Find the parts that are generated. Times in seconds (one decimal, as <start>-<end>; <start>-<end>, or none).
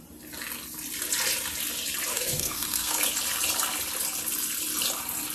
2.1-3.0